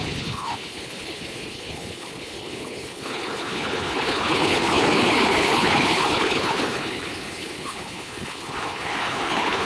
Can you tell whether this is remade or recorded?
remade